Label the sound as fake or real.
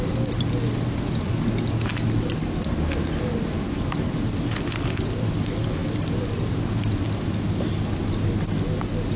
real